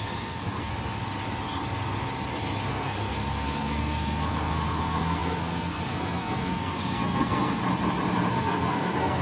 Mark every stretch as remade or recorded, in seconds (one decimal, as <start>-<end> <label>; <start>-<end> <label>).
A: 0.0-0.7 remade; 0.7-2.7 recorded; 2.7-7.6 remade; 7.6-8.3 recorded; 8.3-9.2 remade